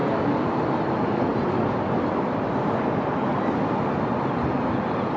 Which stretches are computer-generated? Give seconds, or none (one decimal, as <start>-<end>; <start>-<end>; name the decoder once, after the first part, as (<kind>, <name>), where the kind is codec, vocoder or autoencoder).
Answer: none